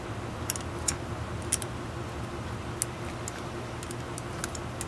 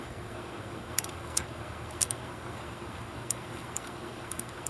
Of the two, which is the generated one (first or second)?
second